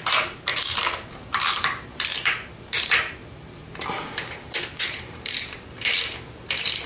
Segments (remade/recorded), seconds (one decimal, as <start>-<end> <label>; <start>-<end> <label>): 0.0-3.6 remade; 3.6-4.3 recorded; 4.3-5.9 remade; 5.9-6.5 recorded; 6.5-6.9 remade